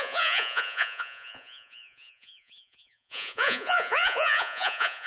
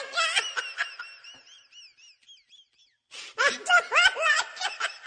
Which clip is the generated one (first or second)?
first